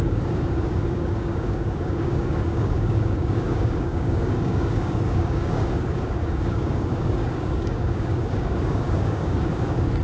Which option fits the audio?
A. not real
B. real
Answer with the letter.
A